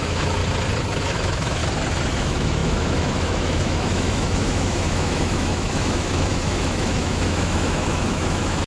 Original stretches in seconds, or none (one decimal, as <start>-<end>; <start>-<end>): 0.4-1.0; 1.6-2.1